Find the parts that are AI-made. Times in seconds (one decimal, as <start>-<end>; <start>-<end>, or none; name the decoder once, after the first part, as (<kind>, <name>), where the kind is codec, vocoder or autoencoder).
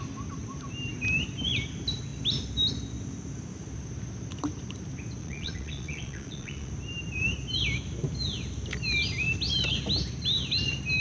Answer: 5.2-6.7 (vocoder, Vocos)